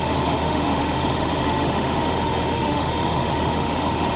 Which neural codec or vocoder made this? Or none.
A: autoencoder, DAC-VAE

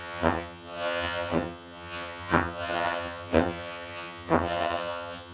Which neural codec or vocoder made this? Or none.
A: vocoder, HiFi-GAN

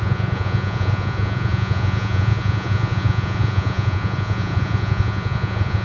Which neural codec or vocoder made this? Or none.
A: vocoder, Vocos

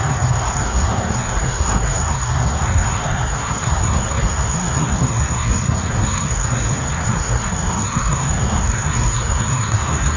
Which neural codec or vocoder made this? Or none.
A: codec, SNAC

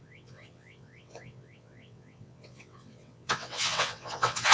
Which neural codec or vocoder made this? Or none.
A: vocoder, WaveNeXt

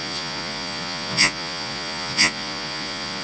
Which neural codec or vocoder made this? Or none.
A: vocoder, Vocos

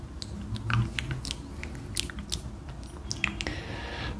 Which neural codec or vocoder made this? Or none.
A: none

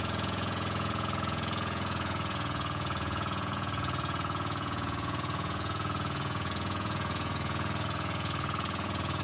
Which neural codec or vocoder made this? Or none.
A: vocoder, Vocos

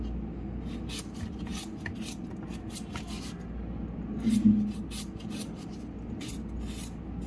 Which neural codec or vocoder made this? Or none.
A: none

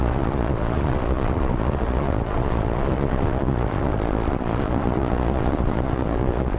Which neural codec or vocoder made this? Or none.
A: vocoder, Vocos